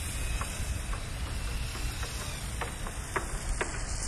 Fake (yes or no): no